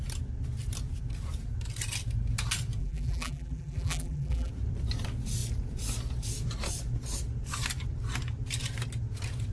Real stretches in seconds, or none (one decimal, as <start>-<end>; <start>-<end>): 0.0-2.8; 4.5-9.5